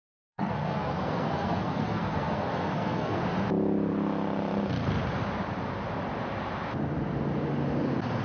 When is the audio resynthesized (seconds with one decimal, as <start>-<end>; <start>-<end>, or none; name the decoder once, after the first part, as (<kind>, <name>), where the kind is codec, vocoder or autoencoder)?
0.0-3.2 (codec, SNAC)